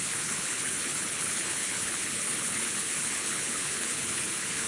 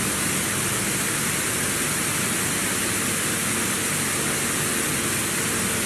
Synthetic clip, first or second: first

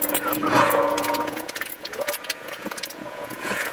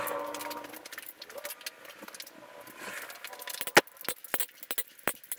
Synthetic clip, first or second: first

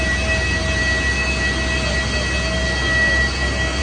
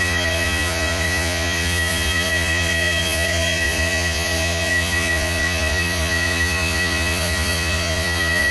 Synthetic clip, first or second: second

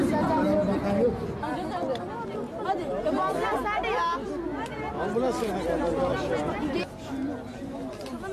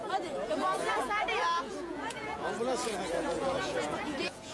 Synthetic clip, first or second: second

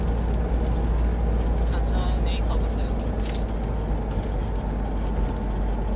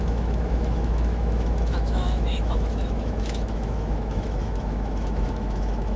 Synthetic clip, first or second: second